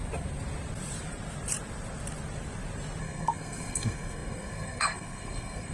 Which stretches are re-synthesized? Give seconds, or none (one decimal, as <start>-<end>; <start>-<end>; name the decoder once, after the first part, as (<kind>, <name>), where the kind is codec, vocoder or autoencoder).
3.0-5.7 (codec, SNAC)